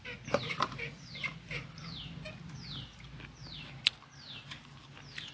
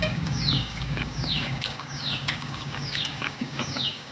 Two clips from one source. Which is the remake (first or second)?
second